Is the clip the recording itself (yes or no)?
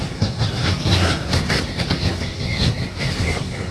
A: no